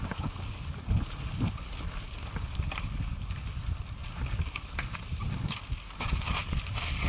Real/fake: real